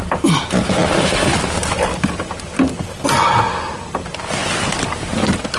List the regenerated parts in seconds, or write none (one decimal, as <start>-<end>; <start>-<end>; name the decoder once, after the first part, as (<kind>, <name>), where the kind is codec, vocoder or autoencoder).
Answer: none